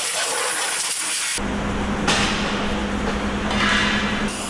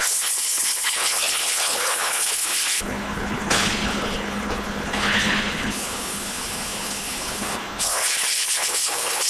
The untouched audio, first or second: first